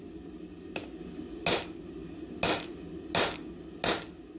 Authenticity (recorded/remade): recorded